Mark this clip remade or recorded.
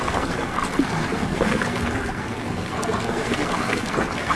remade